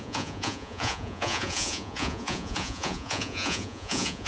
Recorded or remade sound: remade